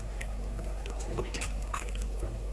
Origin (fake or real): fake